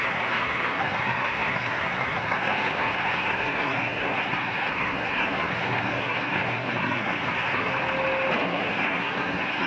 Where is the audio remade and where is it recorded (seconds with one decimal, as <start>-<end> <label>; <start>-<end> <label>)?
0.0-7.7 remade; 7.7-8.4 recorded; 8.4-9.7 remade

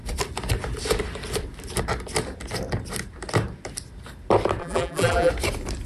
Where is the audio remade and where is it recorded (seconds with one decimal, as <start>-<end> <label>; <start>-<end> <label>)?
0.0-4.6 recorded; 4.6-5.3 remade; 5.3-5.9 recorded

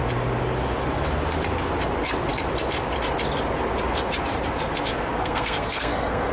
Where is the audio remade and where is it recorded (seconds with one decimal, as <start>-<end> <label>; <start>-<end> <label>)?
0.0-5.1 recorded; 5.1-6.3 remade